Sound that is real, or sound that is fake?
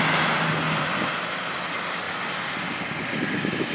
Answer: real